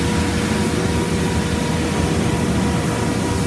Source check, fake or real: real